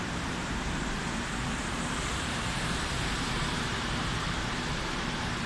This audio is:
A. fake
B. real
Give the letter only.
A